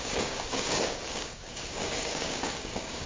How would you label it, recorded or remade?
remade